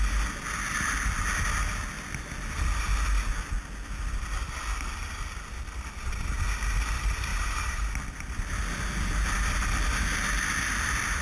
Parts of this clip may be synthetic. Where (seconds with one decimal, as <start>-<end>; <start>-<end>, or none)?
7.3-7.9

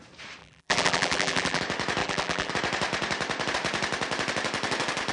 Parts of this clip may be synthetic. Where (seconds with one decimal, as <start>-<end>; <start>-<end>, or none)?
0.4-1.6; 2.0-2.5

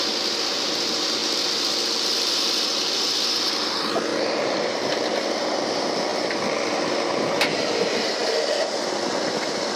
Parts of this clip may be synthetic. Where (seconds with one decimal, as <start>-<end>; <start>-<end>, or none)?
1.2-2.8; 4.1-5.6; 6.1-6.9

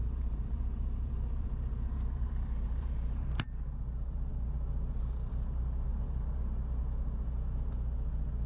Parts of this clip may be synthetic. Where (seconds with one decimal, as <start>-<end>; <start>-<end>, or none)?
0.0-3.3; 5.9-6.4

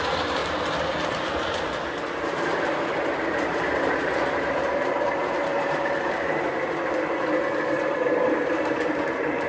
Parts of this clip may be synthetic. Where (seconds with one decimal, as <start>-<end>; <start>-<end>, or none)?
0.0-0.4; 3.3-6.5; 7.8-9.5

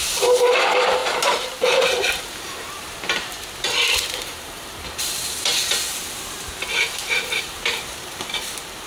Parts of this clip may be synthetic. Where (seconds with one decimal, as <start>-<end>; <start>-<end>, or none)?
0.0-8.9

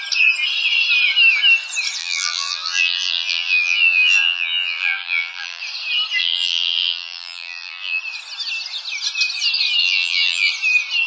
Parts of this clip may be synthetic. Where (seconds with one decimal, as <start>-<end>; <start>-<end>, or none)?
2.0-5.6; 6.2-8.0; 9.8-10.5

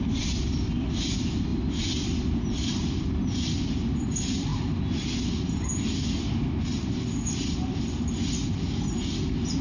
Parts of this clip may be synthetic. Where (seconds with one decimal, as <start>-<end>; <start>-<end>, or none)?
1.5-3.1